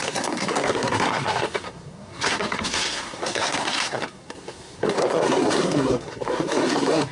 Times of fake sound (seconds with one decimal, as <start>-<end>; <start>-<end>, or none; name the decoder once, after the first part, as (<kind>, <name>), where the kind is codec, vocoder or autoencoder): 0.0-7.1 (codec, SNAC)